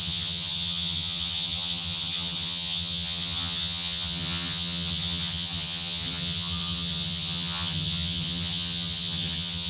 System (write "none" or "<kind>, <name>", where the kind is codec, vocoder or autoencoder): vocoder, HiFi-GAN